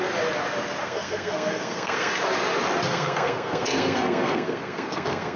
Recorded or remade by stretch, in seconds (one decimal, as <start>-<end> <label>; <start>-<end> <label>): 0.0-0.8 recorded; 0.8-2.1 remade; 2.1-2.9 recorded; 2.9-5.4 remade